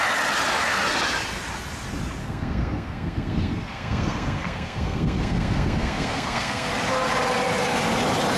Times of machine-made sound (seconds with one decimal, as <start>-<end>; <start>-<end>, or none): 2.2-6.7